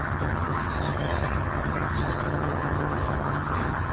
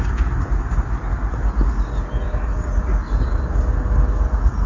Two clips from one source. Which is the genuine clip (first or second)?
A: second